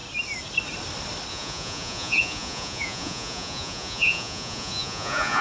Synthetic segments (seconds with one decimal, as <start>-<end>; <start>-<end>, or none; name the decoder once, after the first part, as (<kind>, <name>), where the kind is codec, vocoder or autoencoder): 1.3-5.4 (vocoder, Vocos)